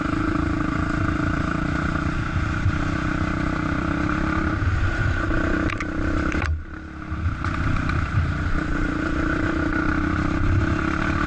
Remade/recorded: remade